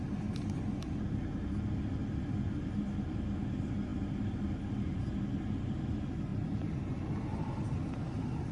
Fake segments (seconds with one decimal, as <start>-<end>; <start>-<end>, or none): none